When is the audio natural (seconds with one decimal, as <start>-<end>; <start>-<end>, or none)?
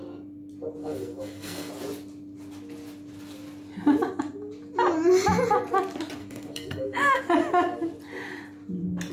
0.0-0.8; 1.7-6.2; 7.2-9.1